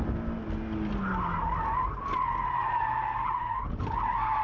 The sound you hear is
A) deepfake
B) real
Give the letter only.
B